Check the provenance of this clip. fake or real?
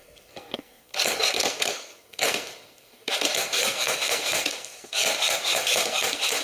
fake